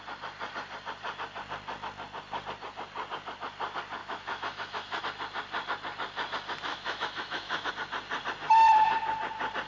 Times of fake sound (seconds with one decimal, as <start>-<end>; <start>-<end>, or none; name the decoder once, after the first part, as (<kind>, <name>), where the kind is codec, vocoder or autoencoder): 4.0-5.0 (autoencoder, DAC-VAE); 6.7-7.7